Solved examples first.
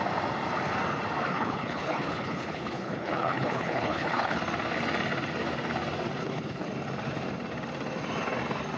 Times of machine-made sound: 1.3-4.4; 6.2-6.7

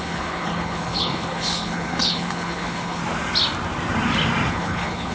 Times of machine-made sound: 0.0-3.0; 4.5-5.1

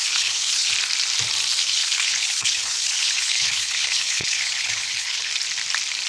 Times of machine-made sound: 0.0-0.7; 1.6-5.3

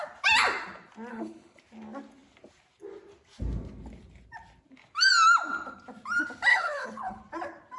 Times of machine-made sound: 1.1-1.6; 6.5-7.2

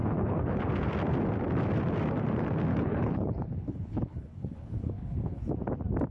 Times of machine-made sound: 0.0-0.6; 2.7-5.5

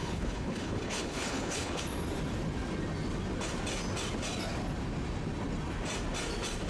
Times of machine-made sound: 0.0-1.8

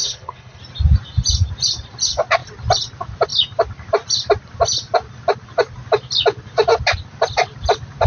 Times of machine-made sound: 0.0-0.6